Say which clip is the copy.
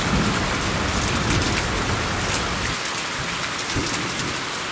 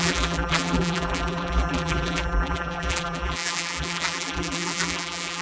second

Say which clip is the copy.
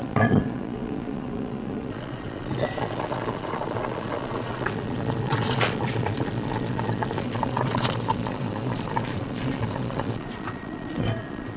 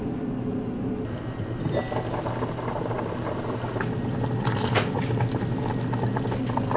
first